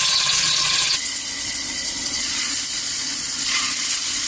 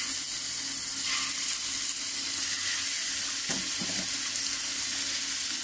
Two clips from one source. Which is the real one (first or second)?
second